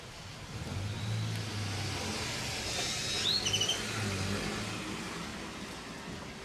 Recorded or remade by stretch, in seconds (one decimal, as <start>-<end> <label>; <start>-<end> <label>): 0.0-6.4 recorded